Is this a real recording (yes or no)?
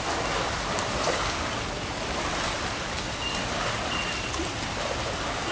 yes